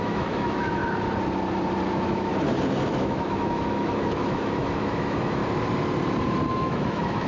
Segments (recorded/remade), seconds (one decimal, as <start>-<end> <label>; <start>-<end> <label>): 0.0-0.8 remade; 0.8-1.9 recorded; 1.9-2.3 remade; 2.3-2.9 recorded; 2.9-5.4 remade; 5.4-6.5 recorded; 6.5-7.3 remade